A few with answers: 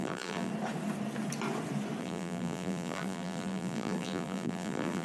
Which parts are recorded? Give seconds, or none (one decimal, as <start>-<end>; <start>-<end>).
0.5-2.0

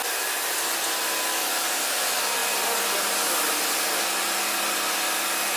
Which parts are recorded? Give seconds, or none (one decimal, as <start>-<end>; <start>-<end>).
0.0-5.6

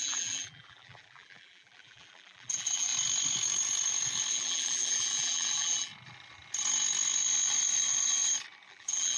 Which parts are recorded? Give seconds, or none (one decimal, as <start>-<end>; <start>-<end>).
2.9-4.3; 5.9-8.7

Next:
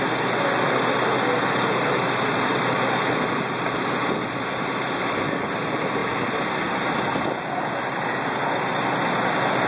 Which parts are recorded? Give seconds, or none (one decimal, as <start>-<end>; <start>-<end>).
0.0-9.7

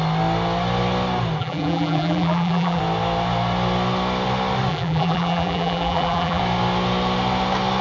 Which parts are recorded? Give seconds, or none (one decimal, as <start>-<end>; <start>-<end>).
0.0-1.4; 2.8-4.7; 6.4-7.8

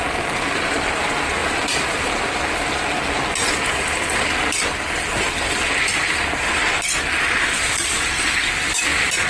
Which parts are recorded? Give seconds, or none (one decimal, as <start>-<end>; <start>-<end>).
0.0-1.4; 2.1-9.3

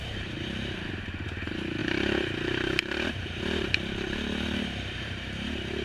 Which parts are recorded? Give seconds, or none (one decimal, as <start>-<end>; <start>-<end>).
none

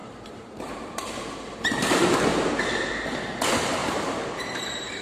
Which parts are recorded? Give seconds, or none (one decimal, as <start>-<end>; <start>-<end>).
0.8-2.3; 2.9-3.8